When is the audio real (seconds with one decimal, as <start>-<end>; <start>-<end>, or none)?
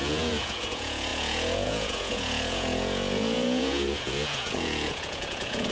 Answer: none